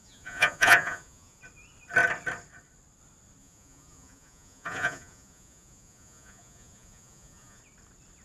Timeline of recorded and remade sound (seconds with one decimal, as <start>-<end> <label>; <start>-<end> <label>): 0.0-1.4 remade; 1.4-3.4 recorded; 3.4-7.6 remade; 7.6-8.2 recorded